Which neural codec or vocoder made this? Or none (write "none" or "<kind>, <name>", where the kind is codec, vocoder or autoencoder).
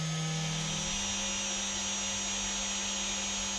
none